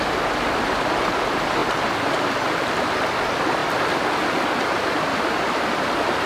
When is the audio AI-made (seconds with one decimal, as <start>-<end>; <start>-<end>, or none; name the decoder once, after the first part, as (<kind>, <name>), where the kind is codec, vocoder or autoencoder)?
none

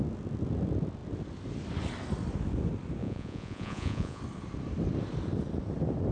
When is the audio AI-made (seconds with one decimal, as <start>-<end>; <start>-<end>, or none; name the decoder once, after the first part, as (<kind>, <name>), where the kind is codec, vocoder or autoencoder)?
3.0-4.2 (vocoder, Vocos)

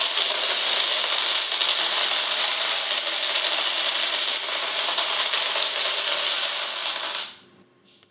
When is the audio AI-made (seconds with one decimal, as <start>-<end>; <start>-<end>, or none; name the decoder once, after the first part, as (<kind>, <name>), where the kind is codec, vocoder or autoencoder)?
none

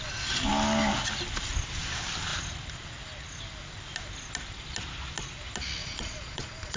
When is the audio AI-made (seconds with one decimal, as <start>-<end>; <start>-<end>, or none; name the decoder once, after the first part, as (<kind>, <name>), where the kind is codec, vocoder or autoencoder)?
5.8-6.8 (vocoder, Vocos)

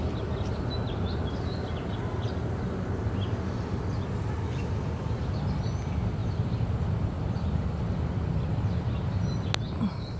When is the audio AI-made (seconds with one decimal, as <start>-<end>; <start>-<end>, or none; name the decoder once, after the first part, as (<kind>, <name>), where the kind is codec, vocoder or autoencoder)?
none

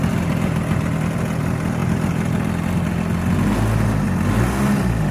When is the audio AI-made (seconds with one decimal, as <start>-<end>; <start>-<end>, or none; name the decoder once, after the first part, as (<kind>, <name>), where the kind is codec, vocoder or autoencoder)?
none

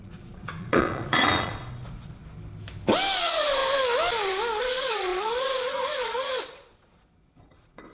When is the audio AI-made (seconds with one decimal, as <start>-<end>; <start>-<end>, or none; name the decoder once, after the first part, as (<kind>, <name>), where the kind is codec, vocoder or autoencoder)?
0.0-2.2 (vocoder, Vocos); 3.2-3.6; 4.6-7.9